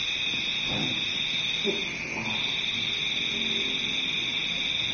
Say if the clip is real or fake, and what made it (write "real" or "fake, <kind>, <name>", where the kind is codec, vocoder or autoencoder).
real